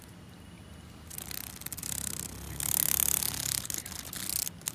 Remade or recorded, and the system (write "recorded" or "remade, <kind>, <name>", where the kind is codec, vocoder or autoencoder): recorded